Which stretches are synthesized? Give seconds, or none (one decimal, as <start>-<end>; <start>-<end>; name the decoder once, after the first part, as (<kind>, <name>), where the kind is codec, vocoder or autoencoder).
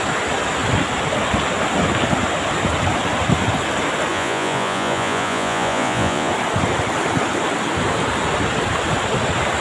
4.1-6.3 (vocoder, Vocos)